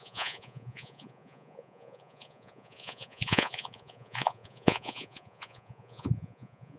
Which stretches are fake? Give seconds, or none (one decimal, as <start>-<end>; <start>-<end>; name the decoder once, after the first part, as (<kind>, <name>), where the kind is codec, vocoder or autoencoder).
0.0-6.8 (vocoder, Vocos)